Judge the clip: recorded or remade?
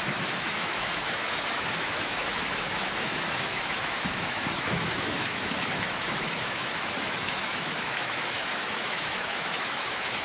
remade